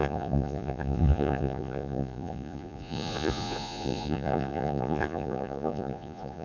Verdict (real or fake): fake